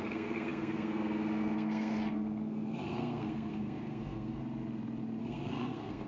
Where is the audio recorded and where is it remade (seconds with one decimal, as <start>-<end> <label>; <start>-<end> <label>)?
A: 0.0-4.4 remade; 4.4-5.2 recorded; 5.2-6.1 remade